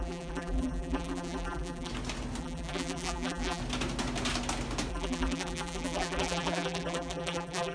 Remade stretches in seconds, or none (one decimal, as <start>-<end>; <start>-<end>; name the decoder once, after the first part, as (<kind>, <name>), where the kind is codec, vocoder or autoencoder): 0.0-1.9 (vocoder, BigVGAN v2); 2.4-3.6; 4.9-7.7